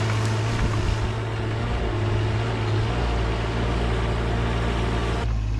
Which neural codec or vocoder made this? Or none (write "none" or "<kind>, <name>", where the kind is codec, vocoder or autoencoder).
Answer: none